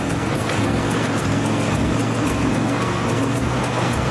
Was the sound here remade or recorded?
remade